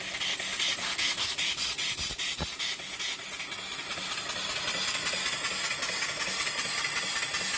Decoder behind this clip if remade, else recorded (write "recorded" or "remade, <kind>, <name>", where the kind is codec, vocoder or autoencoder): recorded